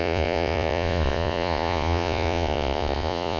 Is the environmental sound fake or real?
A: fake